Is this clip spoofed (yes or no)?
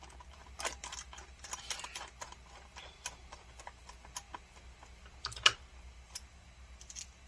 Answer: no